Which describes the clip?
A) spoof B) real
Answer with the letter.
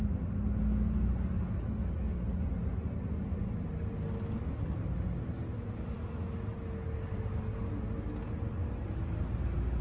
B